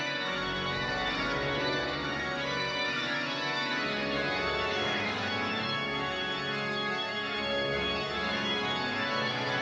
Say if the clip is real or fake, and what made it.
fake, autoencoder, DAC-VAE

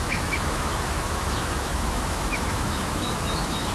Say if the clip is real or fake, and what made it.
fake, autoencoder, DAC-VAE